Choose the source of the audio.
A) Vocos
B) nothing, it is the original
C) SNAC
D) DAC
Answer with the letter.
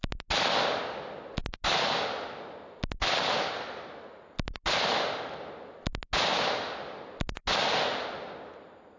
B